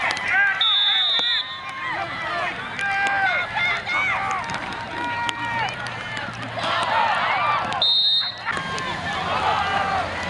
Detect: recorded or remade recorded